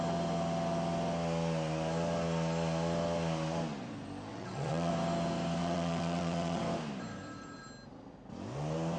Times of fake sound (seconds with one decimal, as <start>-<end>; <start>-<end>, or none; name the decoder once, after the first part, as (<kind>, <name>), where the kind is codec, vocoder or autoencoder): 4.3-4.9 (vocoder, WaveNeXt); 5.6-6.6